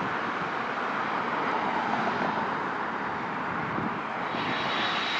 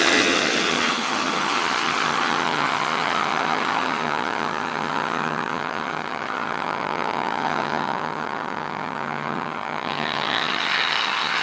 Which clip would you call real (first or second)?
first